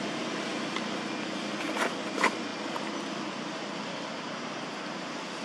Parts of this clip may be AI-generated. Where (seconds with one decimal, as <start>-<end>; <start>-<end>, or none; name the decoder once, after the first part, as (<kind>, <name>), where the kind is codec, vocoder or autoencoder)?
none